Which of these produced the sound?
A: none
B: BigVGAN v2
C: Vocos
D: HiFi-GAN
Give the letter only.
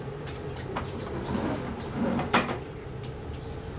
A